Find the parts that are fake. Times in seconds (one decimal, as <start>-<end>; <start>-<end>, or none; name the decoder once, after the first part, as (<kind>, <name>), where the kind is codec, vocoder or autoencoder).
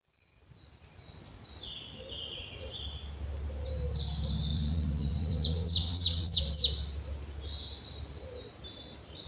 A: 4.5-6.4 (vocoder, Vocos)